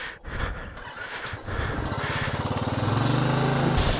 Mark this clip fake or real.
real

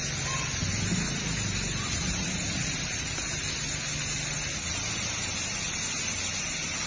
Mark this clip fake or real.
real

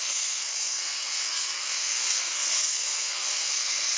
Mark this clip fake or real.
fake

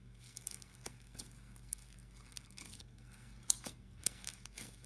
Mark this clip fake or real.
fake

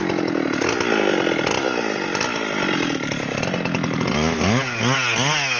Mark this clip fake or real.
real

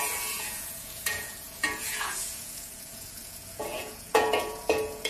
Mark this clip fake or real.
fake